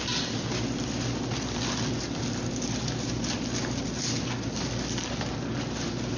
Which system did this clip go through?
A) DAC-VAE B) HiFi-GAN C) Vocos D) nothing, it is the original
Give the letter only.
D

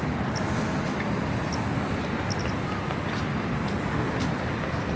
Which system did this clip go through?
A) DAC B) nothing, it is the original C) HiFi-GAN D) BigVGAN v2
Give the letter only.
B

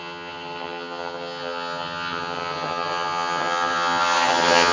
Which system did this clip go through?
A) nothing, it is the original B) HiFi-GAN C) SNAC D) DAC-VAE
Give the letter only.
B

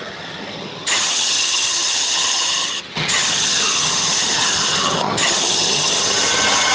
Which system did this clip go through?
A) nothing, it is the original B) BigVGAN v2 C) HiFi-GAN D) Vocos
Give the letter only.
C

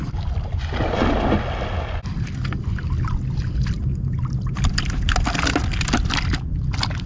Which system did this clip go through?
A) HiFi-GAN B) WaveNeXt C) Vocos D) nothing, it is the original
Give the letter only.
D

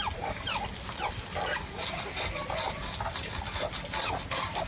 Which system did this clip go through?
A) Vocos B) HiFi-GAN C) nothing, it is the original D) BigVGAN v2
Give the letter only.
C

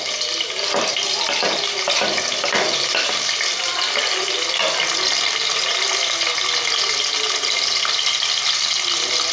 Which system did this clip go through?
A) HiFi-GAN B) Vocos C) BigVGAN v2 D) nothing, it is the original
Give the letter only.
D